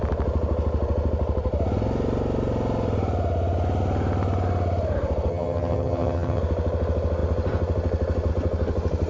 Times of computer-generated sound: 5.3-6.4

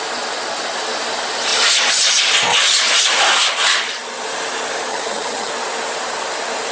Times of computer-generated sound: 4.9-5.5

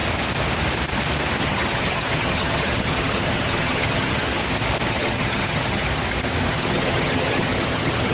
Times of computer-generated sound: 1.4-4.4; 4.9-5.8; 6.5-8.1